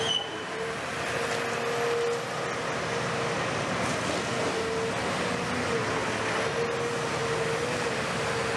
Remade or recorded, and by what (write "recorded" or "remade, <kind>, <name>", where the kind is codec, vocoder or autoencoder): recorded